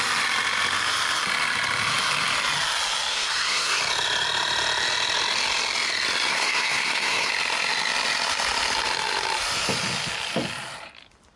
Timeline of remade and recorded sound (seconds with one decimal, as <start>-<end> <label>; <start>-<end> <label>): 0.0-3.1 recorded; 3.1-3.8 remade; 3.8-6.3 recorded; 6.3-7.3 remade; 7.3-11.4 recorded